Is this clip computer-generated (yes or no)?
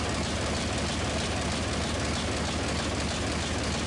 no